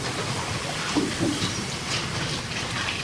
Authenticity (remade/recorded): remade